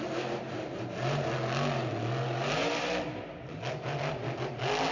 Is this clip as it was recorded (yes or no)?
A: yes